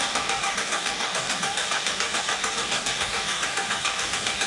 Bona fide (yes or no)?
no